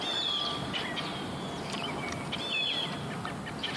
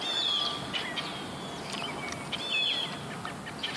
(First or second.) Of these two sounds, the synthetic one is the first